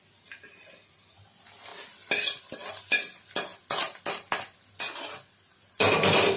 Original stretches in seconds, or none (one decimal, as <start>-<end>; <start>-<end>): 0.0-6.4